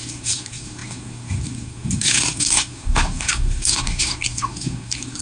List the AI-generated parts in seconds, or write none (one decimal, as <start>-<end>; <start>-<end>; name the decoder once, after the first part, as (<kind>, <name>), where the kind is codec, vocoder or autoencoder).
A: 0.0-5.2 (codec, SNAC)